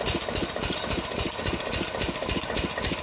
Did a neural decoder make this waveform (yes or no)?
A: no